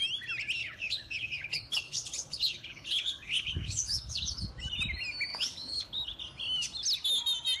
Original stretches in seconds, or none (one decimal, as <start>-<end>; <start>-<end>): 0.0-0.6; 4.5-5.3; 6.2-7.6